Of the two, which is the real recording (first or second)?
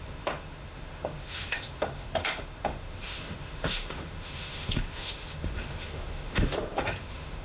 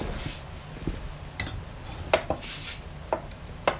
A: second